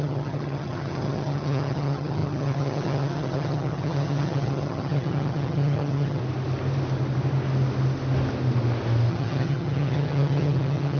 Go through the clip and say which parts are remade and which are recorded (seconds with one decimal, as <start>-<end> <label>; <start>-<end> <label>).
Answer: 0.0-6.2 remade; 6.2-9.1 recorded; 9.1-11.0 remade